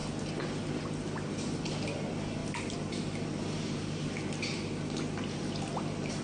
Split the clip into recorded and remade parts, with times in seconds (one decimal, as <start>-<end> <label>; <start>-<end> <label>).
0.0-6.2 recorded